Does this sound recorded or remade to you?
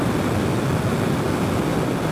recorded